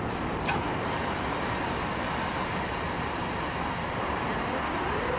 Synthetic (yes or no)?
no